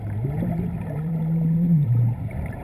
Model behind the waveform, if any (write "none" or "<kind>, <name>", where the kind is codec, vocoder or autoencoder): vocoder, BigVGAN v2